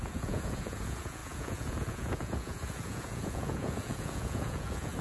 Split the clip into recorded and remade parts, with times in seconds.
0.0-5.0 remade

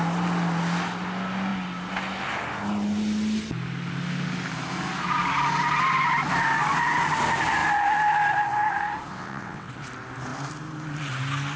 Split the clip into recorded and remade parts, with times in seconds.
0.0-9.1 recorded; 9.1-9.7 remade; 9.7-11.6 recorded

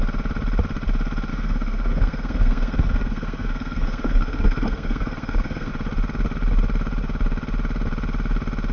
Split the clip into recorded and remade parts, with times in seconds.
0.0-1.3 recorded; 1.3-5.7 remade; 5.7-8.7 recorded

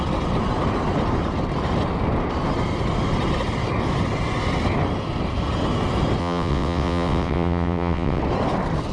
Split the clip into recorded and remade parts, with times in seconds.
0.0-6.2 recorded; 6.2-8.2 remade; 8.2-8.9 recorded

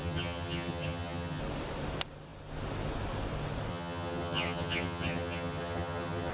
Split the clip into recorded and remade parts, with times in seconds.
0.0-1.4 remade; 1.4-3.7 recorded; 3.7-6.3 remade

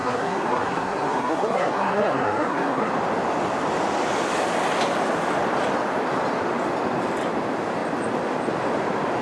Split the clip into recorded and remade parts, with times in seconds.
0.0-2.9 remade; 2.9-9.2 recorded

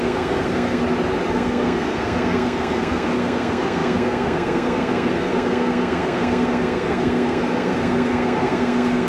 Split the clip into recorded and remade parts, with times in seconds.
0.0-0.8 remade; 0.8-1.3 recorded; 1.3-9.1 remade

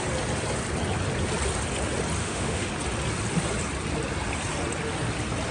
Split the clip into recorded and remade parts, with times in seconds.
0.0-2.2 recorded; 2.2-2.7 remade; 2.7-5.5 recorded